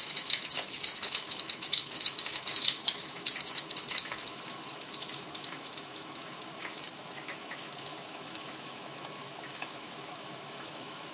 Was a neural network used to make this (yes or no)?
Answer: yes